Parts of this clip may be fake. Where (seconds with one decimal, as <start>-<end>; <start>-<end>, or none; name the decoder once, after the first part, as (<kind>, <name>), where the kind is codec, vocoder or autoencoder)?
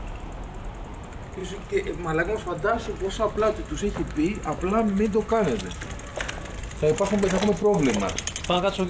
none